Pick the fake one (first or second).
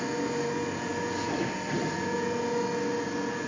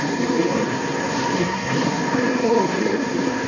second